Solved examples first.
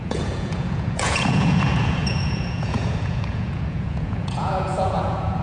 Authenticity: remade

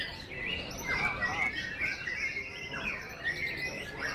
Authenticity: recorded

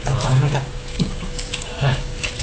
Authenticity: remade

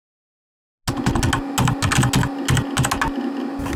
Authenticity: recorded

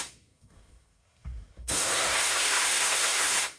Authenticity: remade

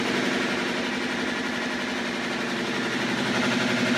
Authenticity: recorded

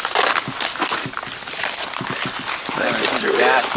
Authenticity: recorded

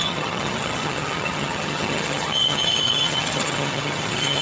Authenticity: remade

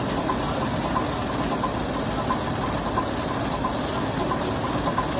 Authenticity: recorded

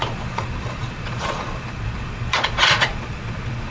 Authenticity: remade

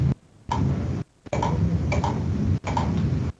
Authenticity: recorded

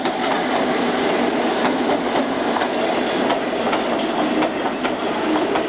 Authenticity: recorded